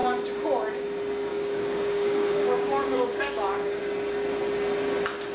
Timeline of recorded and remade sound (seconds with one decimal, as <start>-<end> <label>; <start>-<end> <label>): 0.0-1.3 recorded; 1.3-3.8 remade; 3.8-5.3 recorded